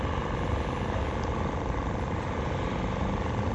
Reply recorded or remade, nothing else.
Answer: recorded